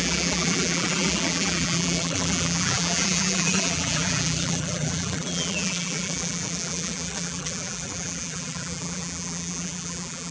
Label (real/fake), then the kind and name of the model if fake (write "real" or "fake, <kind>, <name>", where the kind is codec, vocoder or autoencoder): fake, vocoder, BigVGAN v2